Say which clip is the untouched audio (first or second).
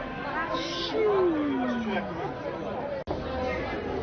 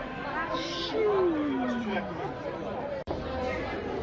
first